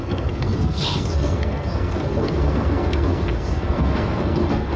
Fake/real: fake